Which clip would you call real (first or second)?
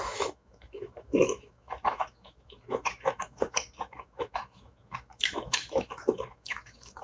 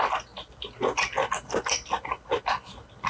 second